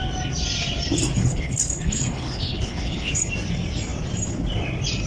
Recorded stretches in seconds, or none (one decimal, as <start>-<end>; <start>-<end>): 0.0-1.2; 3.3-5.1